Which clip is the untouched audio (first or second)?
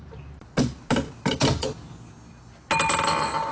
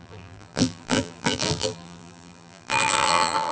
first